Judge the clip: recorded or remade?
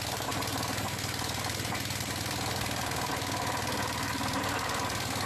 recorded